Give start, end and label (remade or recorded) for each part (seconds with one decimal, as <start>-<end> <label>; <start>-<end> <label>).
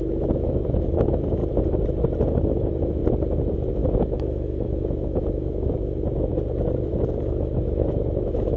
0.0-1.4 remade; 1.4-2.5 recorded; 2.5-3.0 remade; 3.0-3.7 recorded; 3.7-6.3 remade; 6.3-6.9 recorded; 6.9-8.6 remade